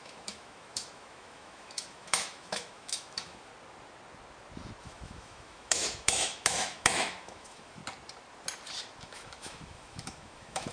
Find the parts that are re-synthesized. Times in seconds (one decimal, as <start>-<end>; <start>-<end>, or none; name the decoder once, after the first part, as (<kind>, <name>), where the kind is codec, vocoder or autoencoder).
0.0-3.5 (autoencoder, DAC-VAE); 4.8-7.8; 9.0-10.7

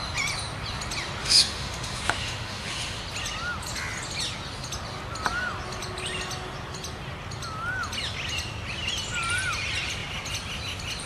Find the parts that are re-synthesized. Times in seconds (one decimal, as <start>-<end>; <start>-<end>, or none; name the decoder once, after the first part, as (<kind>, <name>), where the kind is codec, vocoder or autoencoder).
1.2-3.0 (autoencoder, DAC-VAE)

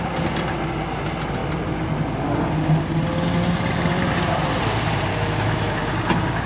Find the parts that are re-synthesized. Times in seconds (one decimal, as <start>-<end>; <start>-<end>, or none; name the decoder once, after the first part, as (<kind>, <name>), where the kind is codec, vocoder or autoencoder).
5.1-5.6 (autoencoder, DAC-VAE)

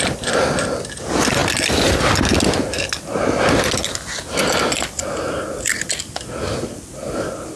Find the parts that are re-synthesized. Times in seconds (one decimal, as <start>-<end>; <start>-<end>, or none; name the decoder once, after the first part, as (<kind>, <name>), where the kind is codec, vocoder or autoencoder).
none

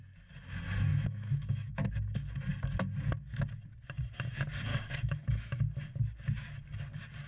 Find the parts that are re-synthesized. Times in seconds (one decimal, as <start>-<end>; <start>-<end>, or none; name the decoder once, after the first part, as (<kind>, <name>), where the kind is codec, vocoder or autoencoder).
0.9-1.9 (autoencoder, DAC-VAE); 4.7-5.6

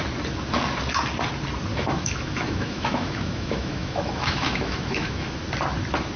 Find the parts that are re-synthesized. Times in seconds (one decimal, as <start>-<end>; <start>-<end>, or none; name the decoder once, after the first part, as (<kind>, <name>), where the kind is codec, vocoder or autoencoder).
1.7-5.4 (autoencoder, DAC-VAE)